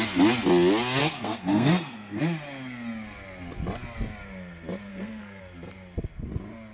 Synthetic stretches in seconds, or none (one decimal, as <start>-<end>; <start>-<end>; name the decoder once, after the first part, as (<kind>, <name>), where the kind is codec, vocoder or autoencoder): 1.0-2.2 (codec, SNAC); 4.9-5.4